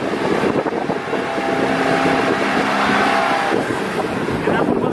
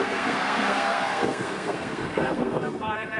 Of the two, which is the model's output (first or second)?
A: second